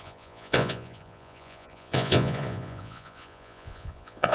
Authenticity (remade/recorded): remade